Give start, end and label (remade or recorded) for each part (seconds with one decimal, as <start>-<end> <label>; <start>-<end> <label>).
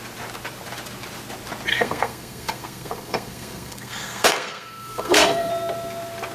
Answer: 0.0-1.7 recorded; 1.7-5.5 remade; 5.5-6.3 recorded